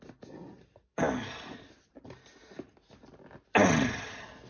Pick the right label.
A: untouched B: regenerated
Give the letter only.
A